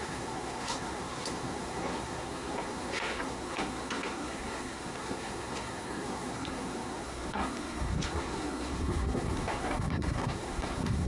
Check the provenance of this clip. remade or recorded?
remade